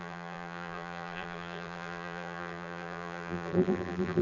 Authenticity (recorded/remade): remade